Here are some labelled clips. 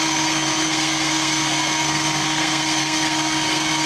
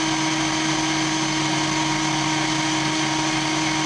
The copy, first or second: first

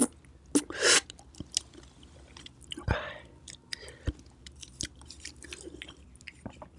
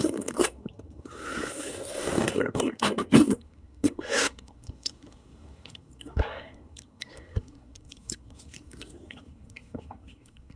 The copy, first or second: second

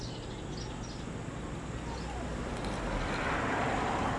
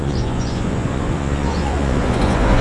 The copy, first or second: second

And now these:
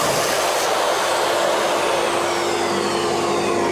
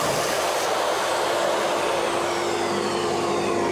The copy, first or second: second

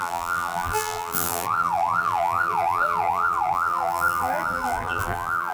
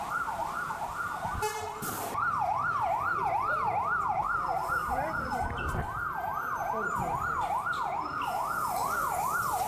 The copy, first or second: first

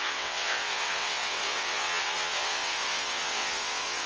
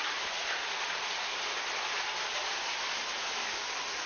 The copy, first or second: first